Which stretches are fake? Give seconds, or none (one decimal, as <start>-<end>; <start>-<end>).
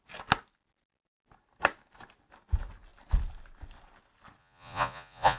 4.4-5.4